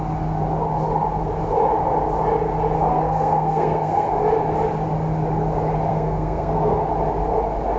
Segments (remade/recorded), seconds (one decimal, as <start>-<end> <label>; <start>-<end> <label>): 0.0-2.9 recorded; 2.9-4.1 remade; 4.1-5.9 recorded; 5.9-6.9 remade; 6.9-7.8 recorded